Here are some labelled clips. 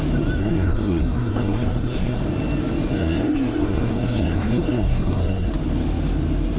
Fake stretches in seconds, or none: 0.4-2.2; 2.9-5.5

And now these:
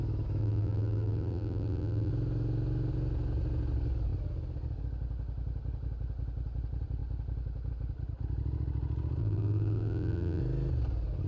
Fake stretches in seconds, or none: 0.4-2.1; 9.2-10.4

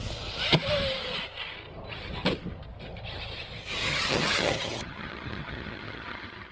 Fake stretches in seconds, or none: 3.9-6.5